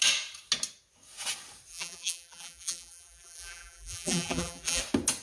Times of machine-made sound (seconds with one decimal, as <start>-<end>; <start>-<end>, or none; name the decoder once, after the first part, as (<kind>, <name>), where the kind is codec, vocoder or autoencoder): 1.7-4.8 (vocoder, BigVGAN v2)